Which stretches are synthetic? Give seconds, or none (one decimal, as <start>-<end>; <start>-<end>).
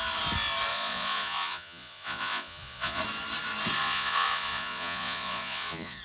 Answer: 0.7-3.0; 3.8-6.0